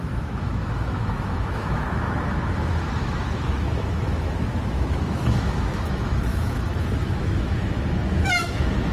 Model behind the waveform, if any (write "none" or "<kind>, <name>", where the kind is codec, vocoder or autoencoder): autoencoder, DAC-VAE